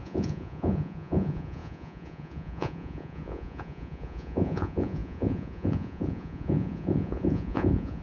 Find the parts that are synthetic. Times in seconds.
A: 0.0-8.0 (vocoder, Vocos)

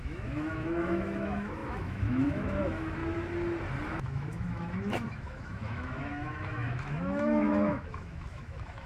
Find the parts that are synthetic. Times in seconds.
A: 0.0-3.0 (autoencoder, DAC-VAE); 3.9-8.9